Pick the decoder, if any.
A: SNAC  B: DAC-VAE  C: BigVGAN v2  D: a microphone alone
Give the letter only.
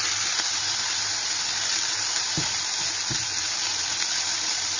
C